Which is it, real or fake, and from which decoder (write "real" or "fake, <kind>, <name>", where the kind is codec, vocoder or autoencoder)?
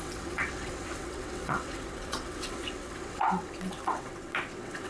fake, vocoder, WaveNeXt